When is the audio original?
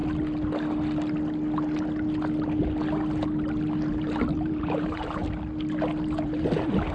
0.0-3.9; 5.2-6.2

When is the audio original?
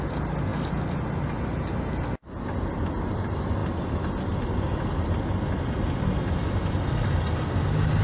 0.0-8.0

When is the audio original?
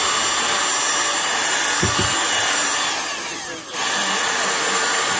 0.0-1.0; 2.6-3.2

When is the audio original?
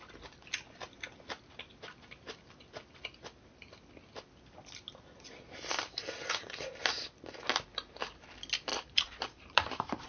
0.0-8.7